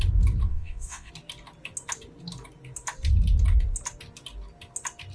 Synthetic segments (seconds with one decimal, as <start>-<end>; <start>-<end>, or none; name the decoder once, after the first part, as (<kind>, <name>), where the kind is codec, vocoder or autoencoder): 0.5-1.1 (vocoder, WaveNeXt)